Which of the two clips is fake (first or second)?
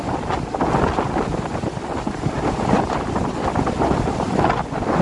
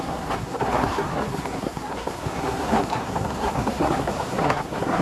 second